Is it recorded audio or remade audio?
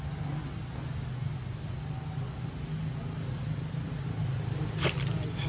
recorded